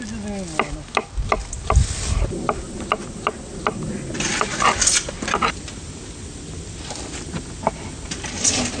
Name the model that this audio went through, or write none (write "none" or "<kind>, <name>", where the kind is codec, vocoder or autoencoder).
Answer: none